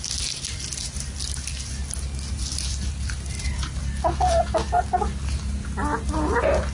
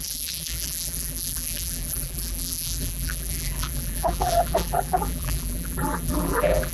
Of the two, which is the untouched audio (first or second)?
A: first